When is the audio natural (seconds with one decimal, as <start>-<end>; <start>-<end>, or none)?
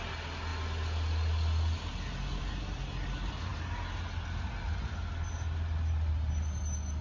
0.0-7.0